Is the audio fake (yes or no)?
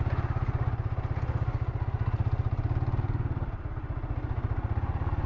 no